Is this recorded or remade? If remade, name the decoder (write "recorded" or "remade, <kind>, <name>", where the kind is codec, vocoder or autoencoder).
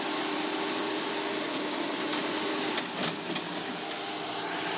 recorded